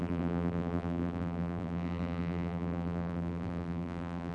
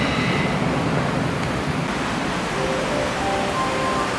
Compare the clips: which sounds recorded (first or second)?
second